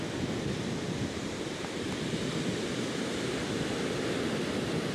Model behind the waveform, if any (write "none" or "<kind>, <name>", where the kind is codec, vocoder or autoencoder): none